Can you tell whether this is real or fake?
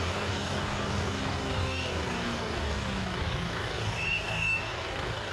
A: fake